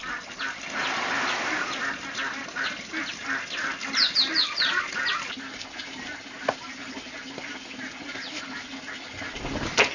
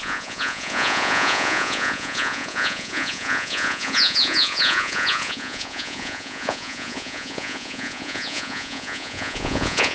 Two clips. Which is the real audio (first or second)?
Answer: first